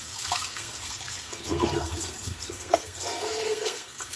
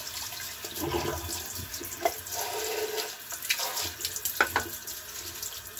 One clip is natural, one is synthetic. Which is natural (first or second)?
second